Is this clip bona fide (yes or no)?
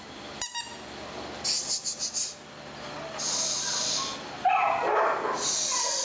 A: yes